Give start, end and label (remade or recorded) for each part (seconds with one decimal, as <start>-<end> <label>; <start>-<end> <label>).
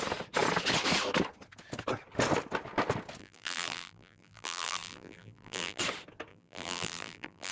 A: 0.0-3.2 recorded; 3.2-5.8 remade; 5.8-6.3 recorded; 6.3-7.5 remade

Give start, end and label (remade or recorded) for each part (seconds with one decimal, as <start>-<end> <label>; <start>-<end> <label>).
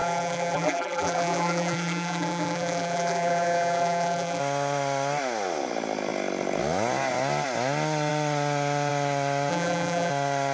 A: 0.0-4.4 remade; 4.4-9.5 recorded; 9.5-10.1 remade; 10.1-10.5 recorded